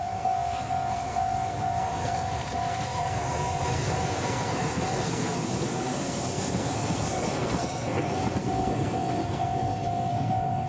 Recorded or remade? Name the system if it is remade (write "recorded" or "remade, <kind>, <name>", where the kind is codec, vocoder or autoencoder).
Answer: remade, codec, SNAC